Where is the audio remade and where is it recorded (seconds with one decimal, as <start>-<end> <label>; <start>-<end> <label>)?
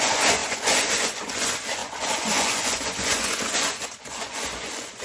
0.0-5.0 remade